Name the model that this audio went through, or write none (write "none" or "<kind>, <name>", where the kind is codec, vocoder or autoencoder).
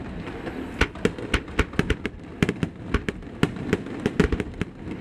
none